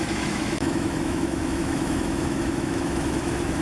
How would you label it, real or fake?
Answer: fake